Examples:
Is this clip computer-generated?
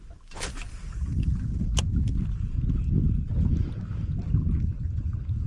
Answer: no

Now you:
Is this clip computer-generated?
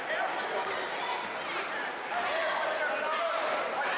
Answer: no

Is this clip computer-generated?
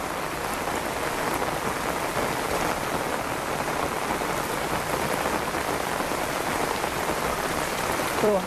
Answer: yes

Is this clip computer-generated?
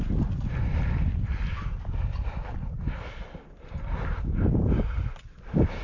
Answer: no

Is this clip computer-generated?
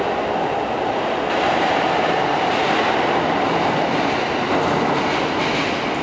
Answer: no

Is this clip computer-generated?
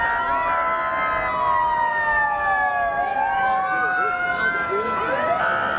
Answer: no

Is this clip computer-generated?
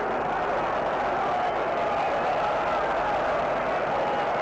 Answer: no